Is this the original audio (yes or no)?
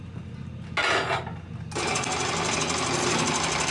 yes